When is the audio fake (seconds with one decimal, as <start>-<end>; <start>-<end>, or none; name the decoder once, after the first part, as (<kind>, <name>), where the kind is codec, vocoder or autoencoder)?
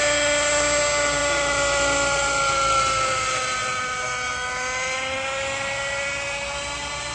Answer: none